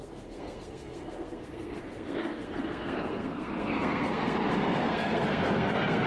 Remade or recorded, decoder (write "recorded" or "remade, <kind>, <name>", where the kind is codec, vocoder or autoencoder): remade, codec, SNAC